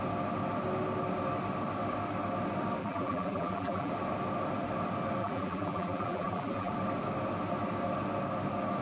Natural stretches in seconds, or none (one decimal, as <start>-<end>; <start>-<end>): 0.0-2.8; 3.9-5.2; 6.7-8.8

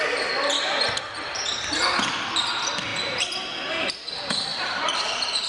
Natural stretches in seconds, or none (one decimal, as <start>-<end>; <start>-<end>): 2.9-3.9

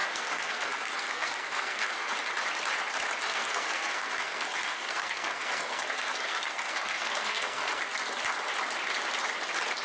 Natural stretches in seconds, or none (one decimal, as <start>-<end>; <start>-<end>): 2.1-3.3; 7.8-9.8

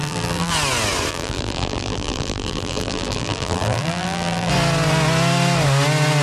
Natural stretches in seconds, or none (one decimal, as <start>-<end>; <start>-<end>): 0.5-1.1; 4.5-6.2

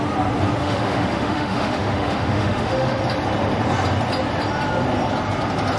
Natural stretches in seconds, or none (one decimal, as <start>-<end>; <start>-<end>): 0.0-0.6; 3.0-5.8

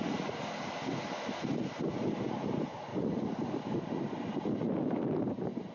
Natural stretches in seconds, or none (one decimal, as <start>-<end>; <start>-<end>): 0.0-5.7

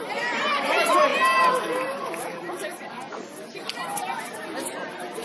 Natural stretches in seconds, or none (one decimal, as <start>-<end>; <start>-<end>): 0.0-5.2